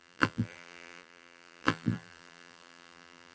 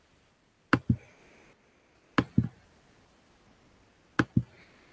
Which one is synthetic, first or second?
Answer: first